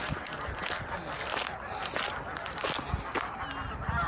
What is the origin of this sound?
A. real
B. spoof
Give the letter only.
A